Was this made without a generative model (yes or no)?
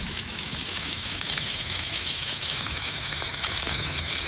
no